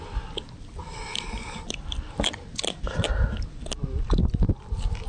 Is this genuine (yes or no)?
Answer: yes